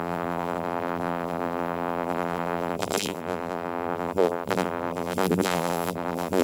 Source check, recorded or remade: remade